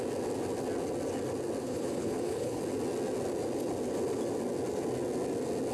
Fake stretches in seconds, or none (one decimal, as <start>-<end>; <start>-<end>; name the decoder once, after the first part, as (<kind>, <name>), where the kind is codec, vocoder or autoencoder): 1.6-2.6 (codec, HILCodec)